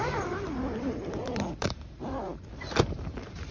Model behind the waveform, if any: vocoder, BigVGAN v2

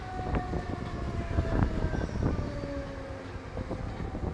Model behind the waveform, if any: none